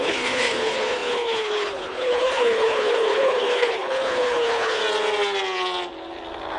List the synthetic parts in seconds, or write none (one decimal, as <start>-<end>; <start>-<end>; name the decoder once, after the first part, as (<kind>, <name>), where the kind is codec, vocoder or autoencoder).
0.0-4.8 (codec, HILCodec)